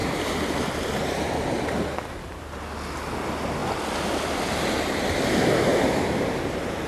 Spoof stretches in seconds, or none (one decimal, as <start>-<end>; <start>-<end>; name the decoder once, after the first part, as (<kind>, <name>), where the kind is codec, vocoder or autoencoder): 0.0-1.2 (vocoder, BigVGAN v2); 5.7-6.9